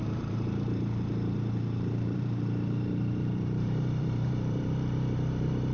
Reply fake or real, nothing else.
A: fake